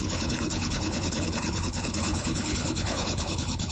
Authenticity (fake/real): fake